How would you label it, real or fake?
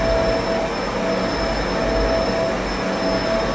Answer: real